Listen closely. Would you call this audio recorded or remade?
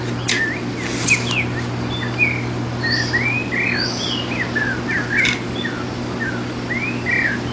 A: recorded